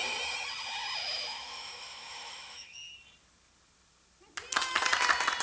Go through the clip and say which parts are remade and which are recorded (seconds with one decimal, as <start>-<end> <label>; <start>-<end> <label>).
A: 0.0-1.0 recorded; 1.0-2.9 remade; 2.9-5.4 recorded